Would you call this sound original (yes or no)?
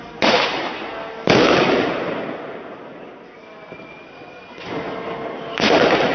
yes